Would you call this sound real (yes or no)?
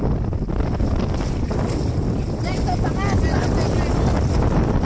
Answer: yes